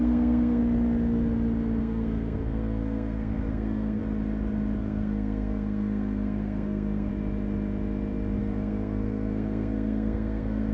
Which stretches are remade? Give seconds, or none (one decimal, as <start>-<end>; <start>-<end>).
0.0-0.6; 1.8-4.0; 4.8-7.1; 8.4-10.7